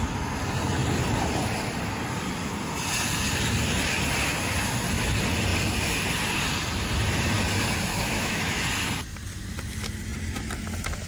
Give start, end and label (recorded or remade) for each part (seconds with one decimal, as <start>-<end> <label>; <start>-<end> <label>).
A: 0.0-7.9 recorded; 7.9-8.6 remade; 8.6-11.1 recorded